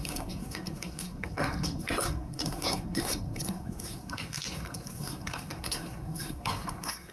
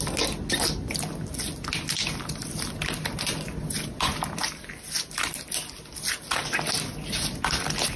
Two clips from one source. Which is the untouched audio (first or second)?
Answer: second